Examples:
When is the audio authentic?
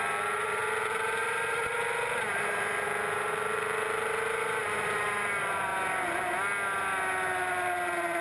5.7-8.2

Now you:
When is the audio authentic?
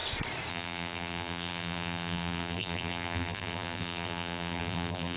0.0-0.5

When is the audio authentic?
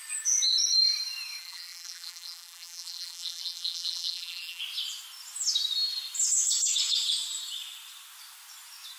0.0-1.4; 4.6-9.0